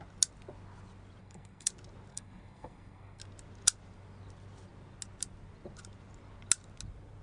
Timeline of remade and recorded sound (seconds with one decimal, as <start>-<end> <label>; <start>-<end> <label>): 0.0-1.2 recorded; 1.2-1.7 remade; 1.7-2.1 recorded; 2.1-3.2 remade; 3.2-7.2 recorded